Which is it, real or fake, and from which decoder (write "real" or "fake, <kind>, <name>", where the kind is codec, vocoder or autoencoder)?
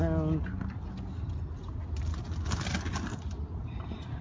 real